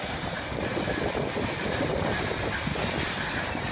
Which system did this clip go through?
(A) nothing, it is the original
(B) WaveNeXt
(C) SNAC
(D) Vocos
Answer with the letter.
A